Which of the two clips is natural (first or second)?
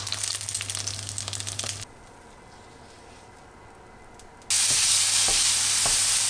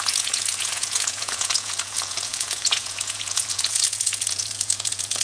first